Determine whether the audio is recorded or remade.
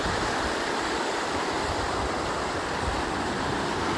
remade